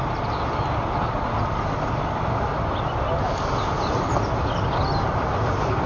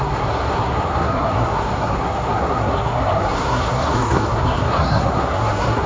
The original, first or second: first